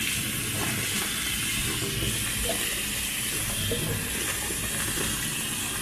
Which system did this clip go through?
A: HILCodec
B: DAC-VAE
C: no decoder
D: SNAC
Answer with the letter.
C